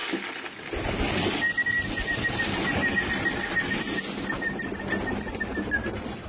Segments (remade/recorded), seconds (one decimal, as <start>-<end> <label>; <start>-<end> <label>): 0.0-6.3 recorded